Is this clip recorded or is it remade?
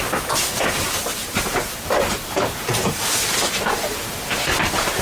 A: recorded